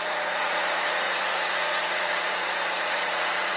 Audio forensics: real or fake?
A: fake